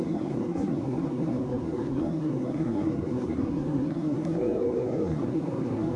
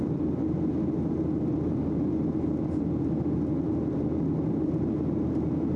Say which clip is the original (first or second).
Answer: second